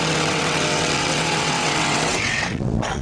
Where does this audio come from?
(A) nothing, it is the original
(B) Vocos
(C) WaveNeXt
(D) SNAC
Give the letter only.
C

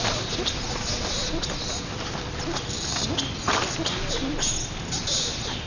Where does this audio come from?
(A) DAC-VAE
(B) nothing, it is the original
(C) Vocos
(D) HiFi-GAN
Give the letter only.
B